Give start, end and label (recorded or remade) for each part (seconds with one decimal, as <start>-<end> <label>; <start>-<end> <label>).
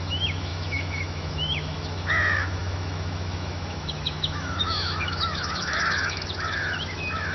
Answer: 0.0-7.3 remade